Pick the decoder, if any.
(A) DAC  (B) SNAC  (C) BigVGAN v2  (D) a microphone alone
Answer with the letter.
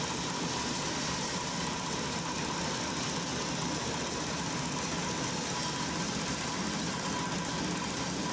D